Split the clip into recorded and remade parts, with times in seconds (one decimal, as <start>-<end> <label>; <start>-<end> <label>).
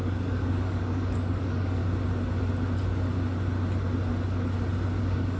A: 0.0-1.8 remade; 1.8-5.0 recorded; 5.0-5.4 remade